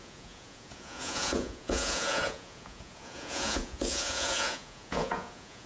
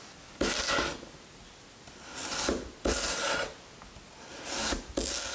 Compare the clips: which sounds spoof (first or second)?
first